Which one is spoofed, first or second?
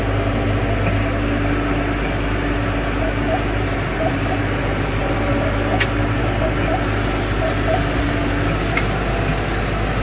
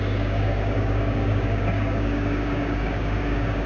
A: second